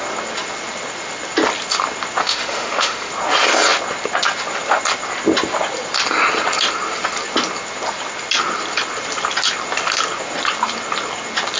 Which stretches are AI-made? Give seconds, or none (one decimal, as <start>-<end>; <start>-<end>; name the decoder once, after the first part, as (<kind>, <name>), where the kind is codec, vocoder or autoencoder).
2.2-3.1 (autoencoder, DAC-VAE)